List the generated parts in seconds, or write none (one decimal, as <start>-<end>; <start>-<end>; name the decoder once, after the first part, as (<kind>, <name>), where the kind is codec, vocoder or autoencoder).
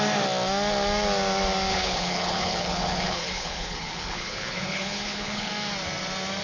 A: 1.7-5.5 (codec, HILCodec)